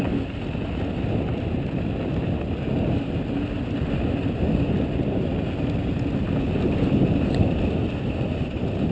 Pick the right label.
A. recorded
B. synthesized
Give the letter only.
A